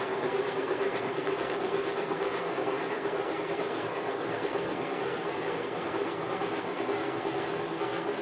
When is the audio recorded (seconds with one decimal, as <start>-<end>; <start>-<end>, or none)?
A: none